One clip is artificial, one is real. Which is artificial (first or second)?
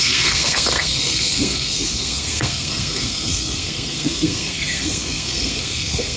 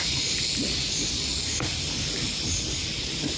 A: first